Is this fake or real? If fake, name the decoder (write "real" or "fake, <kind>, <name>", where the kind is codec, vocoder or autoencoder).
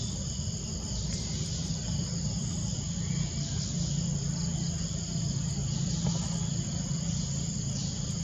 real